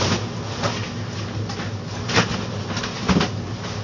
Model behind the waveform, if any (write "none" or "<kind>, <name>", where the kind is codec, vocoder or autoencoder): none